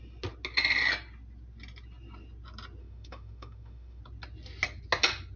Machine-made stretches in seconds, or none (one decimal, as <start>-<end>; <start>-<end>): 2.8-4.0